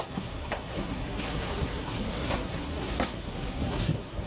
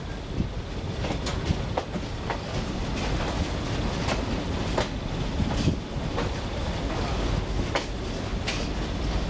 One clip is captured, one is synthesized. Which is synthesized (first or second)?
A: first